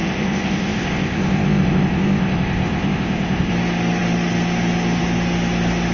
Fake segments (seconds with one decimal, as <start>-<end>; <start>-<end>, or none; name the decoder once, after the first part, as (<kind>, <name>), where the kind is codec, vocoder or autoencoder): 0.0-3.5 (codec, ZipCodec)